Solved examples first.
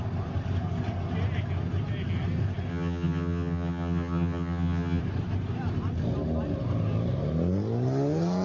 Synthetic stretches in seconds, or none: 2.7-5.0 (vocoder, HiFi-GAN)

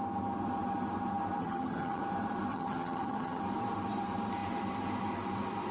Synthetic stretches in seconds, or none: 1.4-2.0 (vocoder, HiFi-GAN); 2.5-3.4

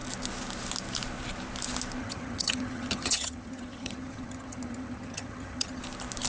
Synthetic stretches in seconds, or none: 2.0-5.8 (vocoder, HiFi-GAN)